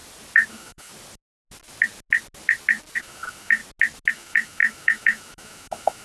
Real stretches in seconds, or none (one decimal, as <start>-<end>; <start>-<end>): 0.0-0.5; 0.9-3.0; 3.6-4.1